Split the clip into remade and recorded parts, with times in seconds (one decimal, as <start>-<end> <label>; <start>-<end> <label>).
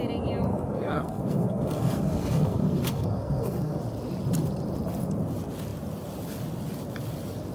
0.0-0.5 recorded; 0.5-3.8 remade; 3.8-7.5 recorded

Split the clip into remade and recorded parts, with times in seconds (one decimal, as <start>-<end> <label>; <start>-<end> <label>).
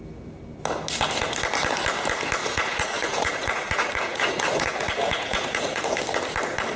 0.0-2.4 recorded; 2.4-6.0 remade; 6.0-6.8 recorded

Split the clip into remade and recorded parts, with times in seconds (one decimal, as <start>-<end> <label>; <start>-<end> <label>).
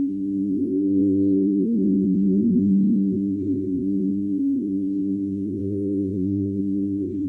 0.0-7.3 remade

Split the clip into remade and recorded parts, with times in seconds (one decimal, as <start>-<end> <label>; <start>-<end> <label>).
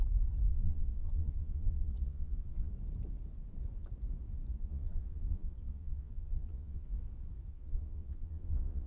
0.0-0.5 recorded; 0.5-2.7 remade; 2.7-4.5 recorded; 4.5-6.9 remade; 6.9-7.5 recorded; 7.5-8.9 remade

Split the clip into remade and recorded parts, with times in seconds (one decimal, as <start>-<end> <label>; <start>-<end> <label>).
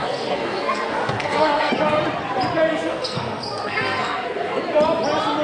0.0-1.7 remade; 1.7-2.7 recorded; 2.7-4.6 remade; 4.6-5.4 recorded